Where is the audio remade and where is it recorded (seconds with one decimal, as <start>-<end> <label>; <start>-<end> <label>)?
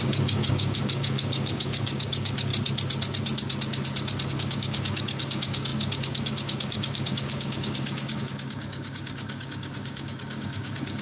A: 0.0-2.5 remade; 2.5-4.3 recorded; 4.3-11.0 remade